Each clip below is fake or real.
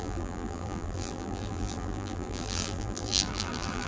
fake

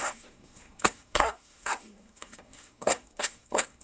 fake